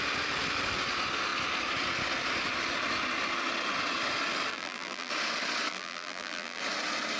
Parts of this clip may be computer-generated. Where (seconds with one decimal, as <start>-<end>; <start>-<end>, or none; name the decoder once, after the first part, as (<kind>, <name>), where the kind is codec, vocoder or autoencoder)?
4.5-5.1 (vocoder, BigVGAN v2); 5.7-6.6